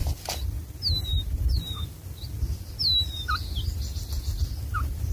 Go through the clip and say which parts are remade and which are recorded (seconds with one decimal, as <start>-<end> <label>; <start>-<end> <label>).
0.0-5.1 recorded